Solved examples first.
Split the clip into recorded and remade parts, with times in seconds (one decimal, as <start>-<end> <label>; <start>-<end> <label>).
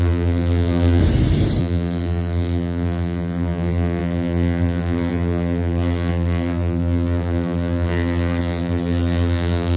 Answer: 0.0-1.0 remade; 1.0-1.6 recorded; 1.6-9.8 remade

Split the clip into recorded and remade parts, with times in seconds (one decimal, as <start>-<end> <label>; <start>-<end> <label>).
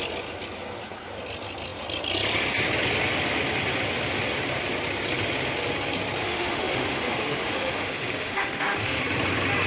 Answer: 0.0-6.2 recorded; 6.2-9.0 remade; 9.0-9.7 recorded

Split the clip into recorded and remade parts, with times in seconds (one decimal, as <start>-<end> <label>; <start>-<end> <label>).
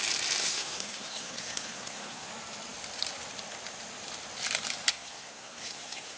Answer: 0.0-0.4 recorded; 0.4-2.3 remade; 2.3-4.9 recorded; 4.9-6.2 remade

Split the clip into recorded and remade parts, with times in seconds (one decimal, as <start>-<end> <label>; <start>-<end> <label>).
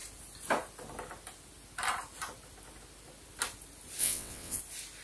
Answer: 0.0-4.0 recorded; 4.0-4.6 remade; 4.6-5.0 recorded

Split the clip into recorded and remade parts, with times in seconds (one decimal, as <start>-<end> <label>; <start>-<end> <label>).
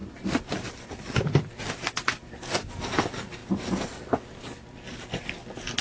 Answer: 0.0-5.8 recorded